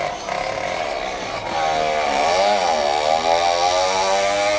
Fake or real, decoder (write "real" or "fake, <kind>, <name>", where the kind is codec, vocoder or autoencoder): real